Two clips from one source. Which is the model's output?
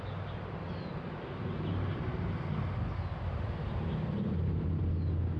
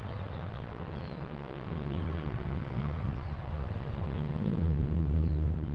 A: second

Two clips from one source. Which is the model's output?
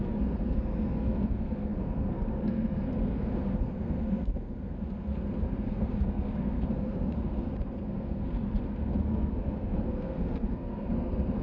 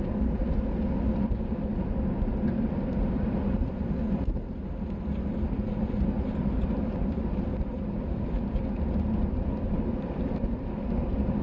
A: first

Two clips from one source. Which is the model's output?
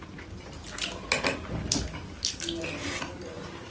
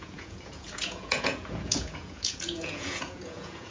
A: second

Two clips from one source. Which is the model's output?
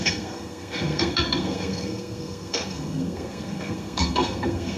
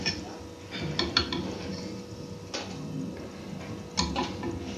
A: first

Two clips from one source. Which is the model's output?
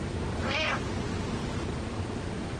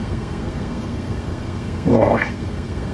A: second